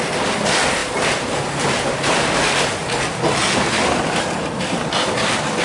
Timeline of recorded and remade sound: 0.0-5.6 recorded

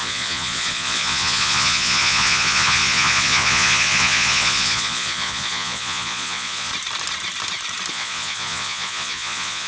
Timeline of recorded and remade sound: 0.0-6.7 remade; 6.7-7.9 recorded; 7.9-9.7 remade

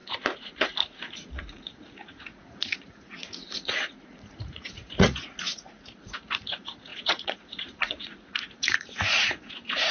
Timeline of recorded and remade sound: 0.0-9.9 remade

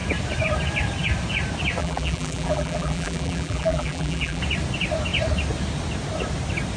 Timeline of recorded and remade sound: 0.0-1.8 recorded; 1.8-4.4 remade; 4.4-6.8 recorded

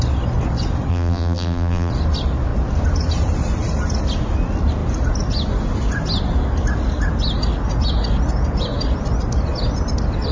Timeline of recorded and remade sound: 0.0-0.9 recorded; 0.9-1.9 remade; 1.9-10.3 recorded

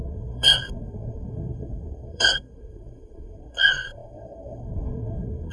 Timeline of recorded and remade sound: 0.0-5.5 remade

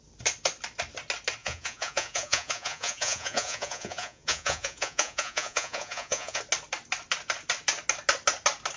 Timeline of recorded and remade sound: 0.0-1.4 recorded; 1.4-6.4 remade; 6.4-8.8 recorded

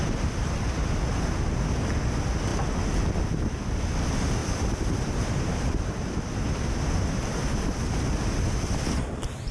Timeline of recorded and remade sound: 0.0-9.5 recorded